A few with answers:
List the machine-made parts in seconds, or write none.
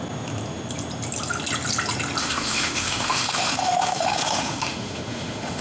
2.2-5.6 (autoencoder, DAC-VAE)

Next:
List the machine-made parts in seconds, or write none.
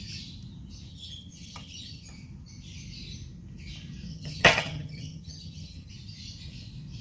0.9-2.1 (vocoder, HiFi-GAN); 4.1-5.9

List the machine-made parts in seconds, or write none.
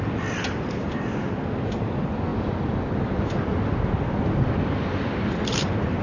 none